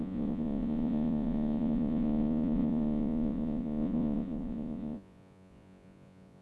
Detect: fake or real fake